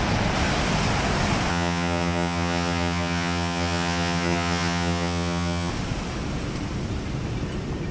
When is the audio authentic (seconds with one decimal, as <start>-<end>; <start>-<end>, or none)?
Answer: 0.0-1.5; 5.7-7.9